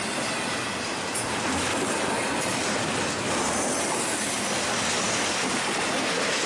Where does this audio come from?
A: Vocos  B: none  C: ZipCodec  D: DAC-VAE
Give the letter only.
B